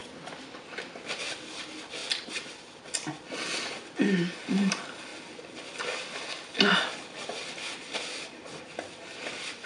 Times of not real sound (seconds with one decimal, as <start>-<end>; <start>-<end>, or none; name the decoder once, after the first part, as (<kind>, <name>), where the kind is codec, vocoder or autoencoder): none